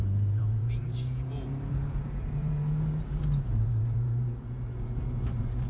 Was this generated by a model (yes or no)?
yes